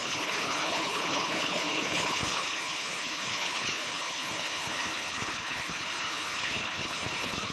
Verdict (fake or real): fake